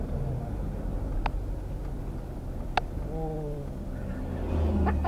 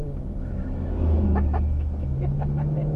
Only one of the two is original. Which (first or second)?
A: first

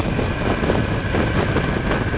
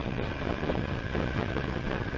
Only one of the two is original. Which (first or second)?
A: first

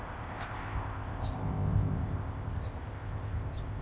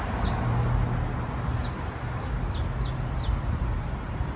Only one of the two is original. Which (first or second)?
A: second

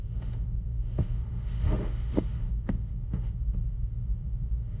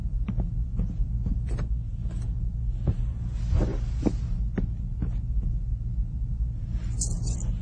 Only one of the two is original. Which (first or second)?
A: second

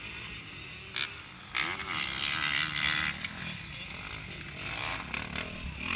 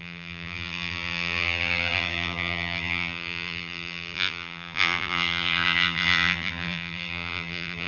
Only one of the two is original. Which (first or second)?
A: first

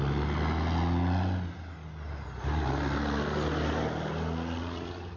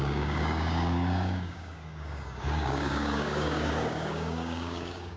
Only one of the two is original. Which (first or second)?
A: first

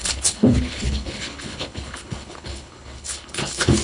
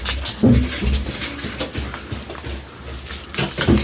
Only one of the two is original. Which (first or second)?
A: second